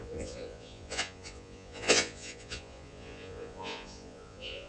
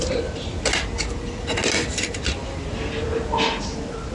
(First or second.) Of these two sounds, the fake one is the first